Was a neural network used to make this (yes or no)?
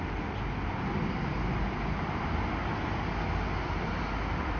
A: no